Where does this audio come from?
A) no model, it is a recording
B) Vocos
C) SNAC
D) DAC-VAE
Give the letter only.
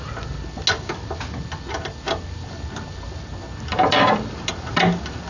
A